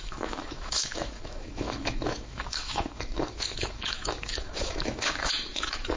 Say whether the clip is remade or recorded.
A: remade